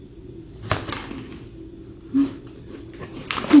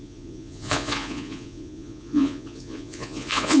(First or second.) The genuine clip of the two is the first